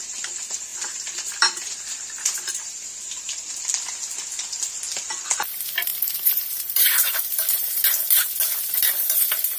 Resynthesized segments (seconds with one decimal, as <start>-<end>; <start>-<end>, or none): 0.7-2.7; 5.9-8.0